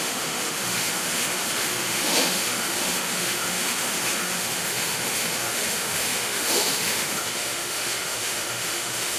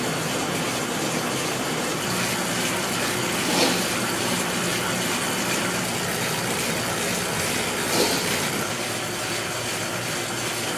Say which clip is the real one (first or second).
second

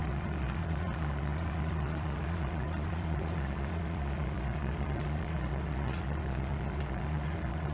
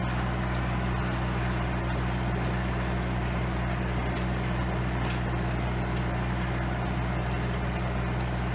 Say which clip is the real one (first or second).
second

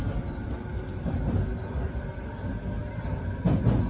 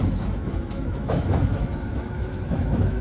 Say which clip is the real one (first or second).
first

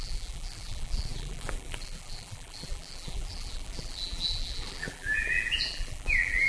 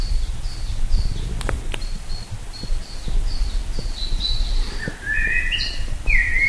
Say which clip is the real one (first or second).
second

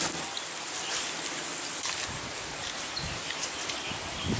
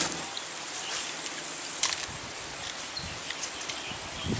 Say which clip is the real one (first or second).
first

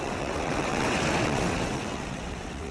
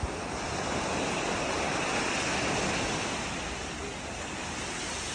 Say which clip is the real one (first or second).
second